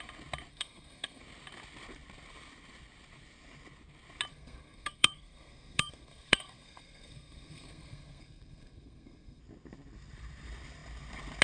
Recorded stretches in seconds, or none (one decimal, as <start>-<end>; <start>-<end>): 0.0-0.5; 1.2-4.3; 9.4-11.4